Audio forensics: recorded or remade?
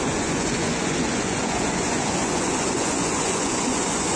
remade